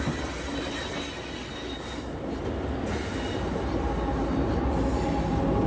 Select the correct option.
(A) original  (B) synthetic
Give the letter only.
A